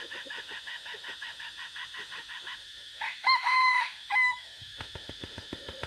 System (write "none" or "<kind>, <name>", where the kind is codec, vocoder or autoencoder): autoencoder, DAC-VAE